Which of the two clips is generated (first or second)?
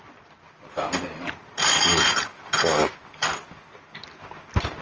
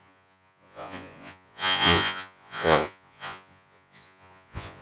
second